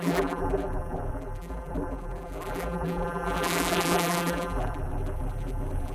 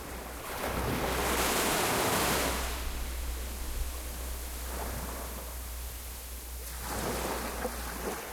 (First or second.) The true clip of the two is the second